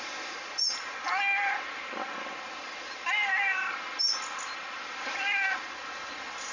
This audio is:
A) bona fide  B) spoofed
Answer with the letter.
A